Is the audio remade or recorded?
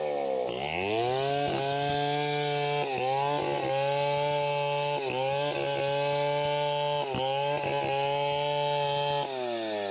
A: recorded